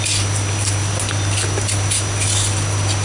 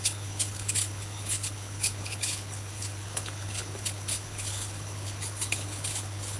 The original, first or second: first